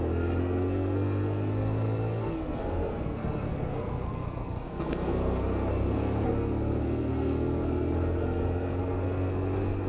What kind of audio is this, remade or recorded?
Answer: remade